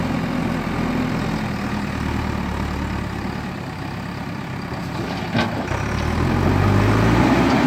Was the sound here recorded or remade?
recorded